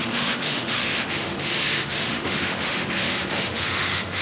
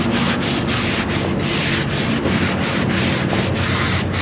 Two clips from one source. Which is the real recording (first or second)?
second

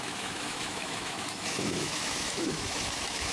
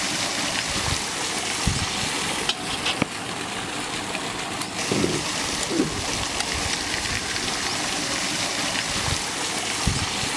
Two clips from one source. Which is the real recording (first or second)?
second